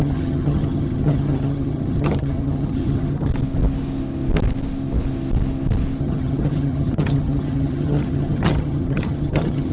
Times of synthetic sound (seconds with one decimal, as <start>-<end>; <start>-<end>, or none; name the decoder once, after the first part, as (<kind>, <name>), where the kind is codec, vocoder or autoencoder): 0.0-3.3 (vocoder, HiFi-GAN); 6.0-9.7